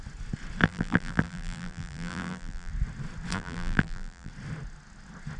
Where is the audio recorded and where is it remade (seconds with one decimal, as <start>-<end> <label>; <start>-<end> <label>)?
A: 0.0-0.6 recorded; 0.6-2.7 remade; 2.7-3.3 recorded; 3.3-4.3 remade; 4.3-5.4 recorded